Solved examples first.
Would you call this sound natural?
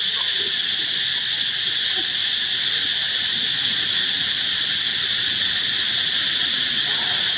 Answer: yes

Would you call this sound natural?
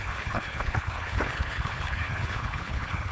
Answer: no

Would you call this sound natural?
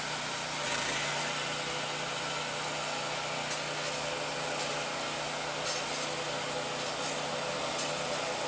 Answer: yes